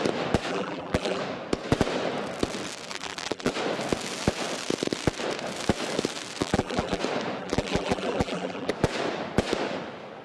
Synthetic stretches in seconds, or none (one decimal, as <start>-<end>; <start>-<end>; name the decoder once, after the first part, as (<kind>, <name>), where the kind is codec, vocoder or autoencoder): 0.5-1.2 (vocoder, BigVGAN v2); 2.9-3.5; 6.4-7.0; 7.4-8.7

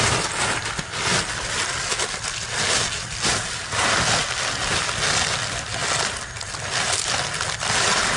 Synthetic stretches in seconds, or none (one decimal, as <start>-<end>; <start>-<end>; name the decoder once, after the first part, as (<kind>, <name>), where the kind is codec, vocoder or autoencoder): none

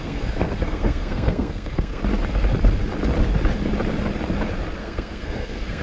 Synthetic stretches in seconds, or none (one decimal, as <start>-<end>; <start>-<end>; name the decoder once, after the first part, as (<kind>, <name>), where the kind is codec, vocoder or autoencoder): 0.0-2.0 (codec, SNAC); 4.8-5.8

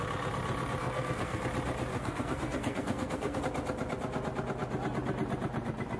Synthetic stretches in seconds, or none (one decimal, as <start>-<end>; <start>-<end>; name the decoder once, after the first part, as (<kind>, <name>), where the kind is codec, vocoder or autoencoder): 0.8-1.4 (codec, SNAC); 1.9-3.4

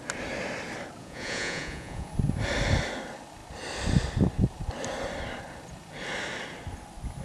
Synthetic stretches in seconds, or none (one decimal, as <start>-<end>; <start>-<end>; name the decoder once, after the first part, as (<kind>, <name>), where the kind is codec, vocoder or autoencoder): 1.0-2.1 (vocoder, Vocos)